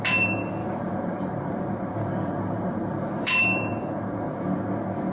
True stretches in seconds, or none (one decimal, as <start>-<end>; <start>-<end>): 0.0-0.6; 3.7-5.1